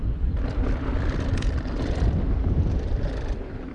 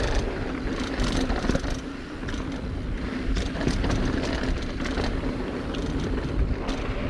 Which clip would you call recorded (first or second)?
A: second